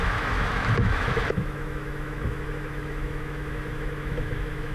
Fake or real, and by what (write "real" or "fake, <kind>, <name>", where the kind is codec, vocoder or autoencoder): fake, autoencoder, DAC-VAE